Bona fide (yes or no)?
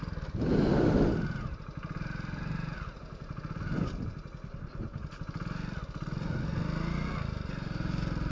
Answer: yes